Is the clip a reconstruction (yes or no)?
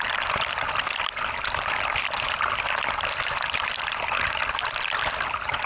no